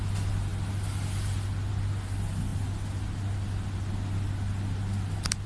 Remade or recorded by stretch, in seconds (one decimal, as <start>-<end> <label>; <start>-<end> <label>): 0.0-5.5 recorded